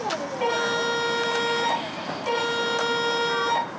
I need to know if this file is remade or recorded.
recorded